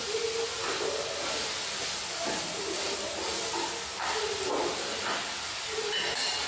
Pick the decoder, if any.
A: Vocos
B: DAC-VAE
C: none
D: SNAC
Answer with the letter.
C